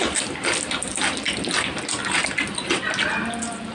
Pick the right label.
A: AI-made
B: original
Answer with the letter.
B